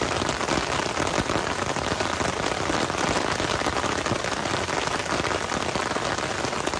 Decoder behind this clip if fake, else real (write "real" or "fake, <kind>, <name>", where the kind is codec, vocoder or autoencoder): real